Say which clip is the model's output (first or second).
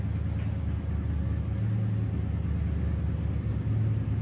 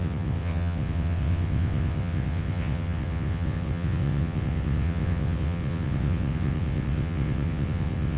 second